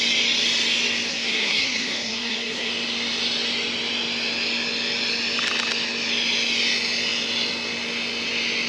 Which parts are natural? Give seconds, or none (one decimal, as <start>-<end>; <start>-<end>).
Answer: 0.0-1.1; 2.7-8.7

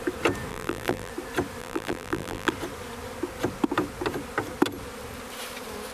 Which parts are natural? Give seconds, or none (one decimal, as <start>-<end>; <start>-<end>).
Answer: 0.0-0.5; 1.1-1.6; 2.5-5.9

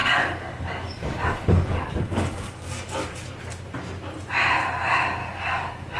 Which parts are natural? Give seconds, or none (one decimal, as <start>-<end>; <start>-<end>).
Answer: 3.3-5.2

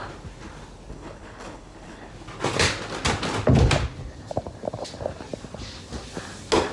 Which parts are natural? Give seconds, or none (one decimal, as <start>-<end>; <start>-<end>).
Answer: 0.0-0.9; 2.1-6.7

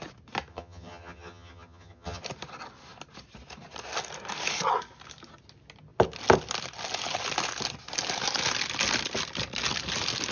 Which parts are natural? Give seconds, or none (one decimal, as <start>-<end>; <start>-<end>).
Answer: 0.0-0.5; 2.2-10.3

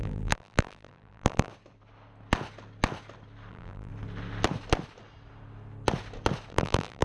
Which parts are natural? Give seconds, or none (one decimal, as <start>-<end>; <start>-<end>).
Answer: 1.5-3.5; 3.9-6.5

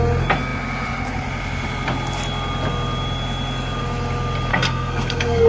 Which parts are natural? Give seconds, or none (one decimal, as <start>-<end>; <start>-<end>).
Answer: 0.0-4.5